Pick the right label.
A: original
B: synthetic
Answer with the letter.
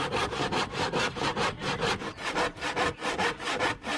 B